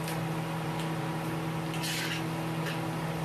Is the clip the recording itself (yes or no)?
yes